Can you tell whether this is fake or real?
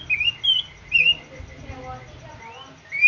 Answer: real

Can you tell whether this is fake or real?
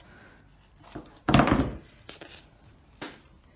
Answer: real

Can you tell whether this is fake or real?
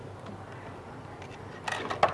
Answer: real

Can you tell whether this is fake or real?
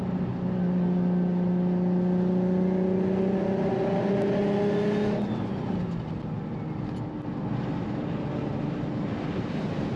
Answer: real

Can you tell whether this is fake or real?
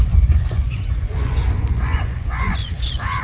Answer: fake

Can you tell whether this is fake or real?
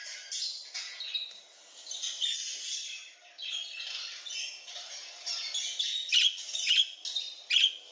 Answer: real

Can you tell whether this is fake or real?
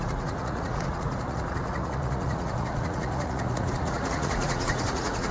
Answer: fake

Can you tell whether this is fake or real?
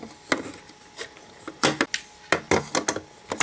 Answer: real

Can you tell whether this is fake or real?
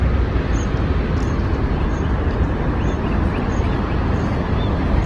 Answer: real